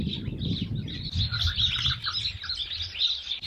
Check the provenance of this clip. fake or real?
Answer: real